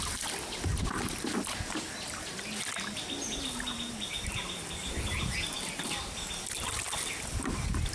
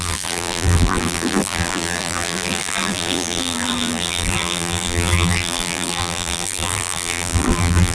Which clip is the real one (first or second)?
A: first